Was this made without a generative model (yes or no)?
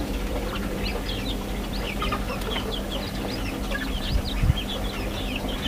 yes